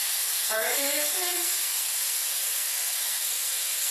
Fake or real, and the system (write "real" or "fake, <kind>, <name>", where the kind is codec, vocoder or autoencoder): fake, codec, SNAC